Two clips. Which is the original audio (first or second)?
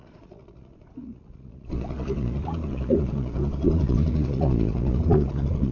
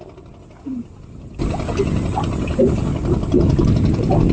second